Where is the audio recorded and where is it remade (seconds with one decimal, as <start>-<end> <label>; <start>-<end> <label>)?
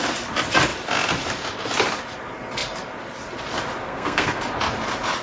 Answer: 0.0-3.8 recorded; 3.8-4.4 remade; 4.4-5.2 recorded